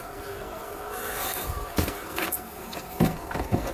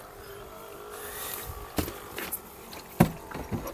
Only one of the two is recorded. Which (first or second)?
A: second